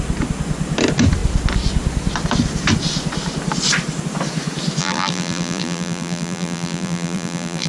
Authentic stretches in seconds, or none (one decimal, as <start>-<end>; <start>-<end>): 0.0-4.8

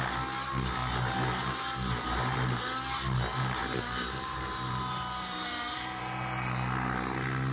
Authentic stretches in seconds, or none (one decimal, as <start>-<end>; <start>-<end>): 0.0-3.6; 6.0-7.5

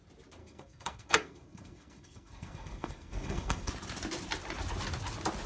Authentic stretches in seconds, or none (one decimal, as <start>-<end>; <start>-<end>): 0.0-0.4; 3.7-5.5

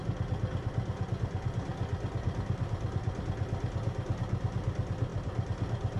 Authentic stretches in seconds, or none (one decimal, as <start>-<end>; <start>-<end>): 0.0-6.0

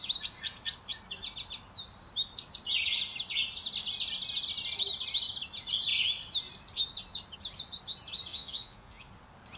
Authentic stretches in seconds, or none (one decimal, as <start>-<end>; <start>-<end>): 0.0-8.3; 9.1-9.6